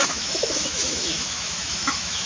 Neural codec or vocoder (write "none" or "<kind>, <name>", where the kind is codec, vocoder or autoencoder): autoencoder, DAC-VAE